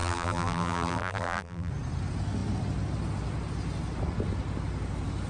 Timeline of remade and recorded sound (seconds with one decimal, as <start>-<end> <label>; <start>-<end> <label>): 0.0-1.7 remade; 1.7-5.3 recorded